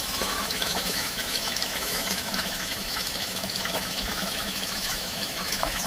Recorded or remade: remade